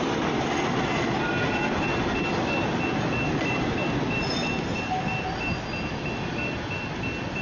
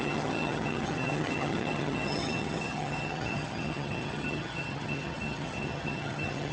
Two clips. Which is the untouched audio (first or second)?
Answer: first